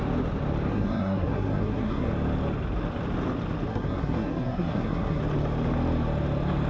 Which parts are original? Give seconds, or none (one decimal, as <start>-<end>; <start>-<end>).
0.0-0.7; 2.1-3.7; 5.2-6.7